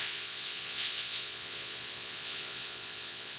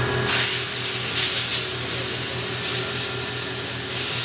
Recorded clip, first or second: second